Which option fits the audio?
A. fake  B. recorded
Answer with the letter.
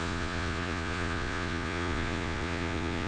A